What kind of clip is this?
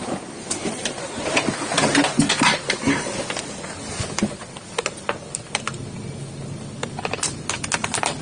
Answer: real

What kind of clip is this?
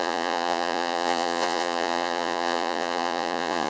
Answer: fake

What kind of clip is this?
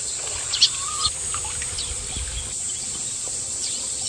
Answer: real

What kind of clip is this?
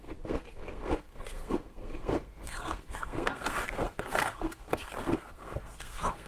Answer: fake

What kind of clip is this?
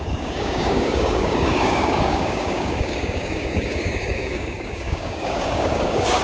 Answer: fake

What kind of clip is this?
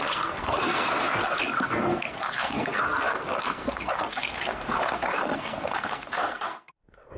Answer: fake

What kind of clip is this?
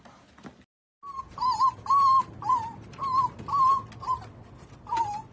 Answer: real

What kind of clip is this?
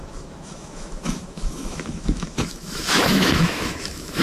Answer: fake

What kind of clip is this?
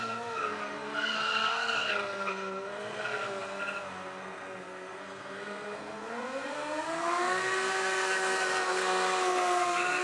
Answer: fake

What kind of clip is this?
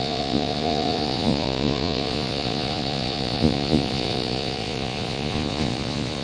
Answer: fake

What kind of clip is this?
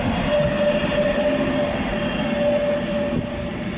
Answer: real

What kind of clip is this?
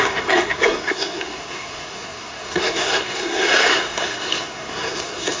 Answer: fake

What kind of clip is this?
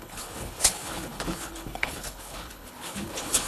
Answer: fake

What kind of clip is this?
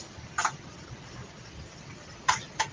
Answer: real